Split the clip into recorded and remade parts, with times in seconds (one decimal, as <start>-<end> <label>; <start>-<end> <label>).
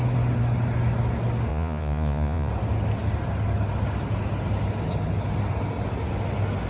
0.0-1.5 recorded; 1.5-2.5 remade; 2.5-6.7 recorded